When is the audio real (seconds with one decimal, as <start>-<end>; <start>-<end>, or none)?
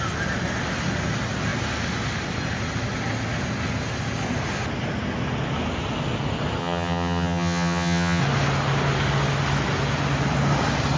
0.0-6.6; 8.2-11.0